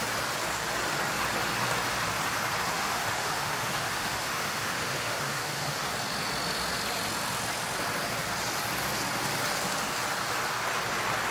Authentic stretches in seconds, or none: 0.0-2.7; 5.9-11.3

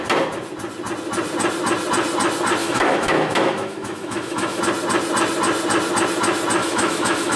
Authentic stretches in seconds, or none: 0.0-2.6; 4.6-6.6

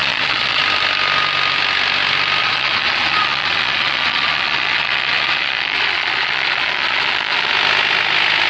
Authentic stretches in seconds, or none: 0.6-2.4; 7.5-8.5

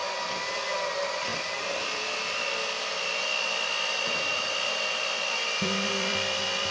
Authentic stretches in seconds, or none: 0.0-0.9

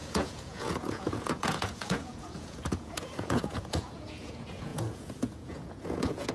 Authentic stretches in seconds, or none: none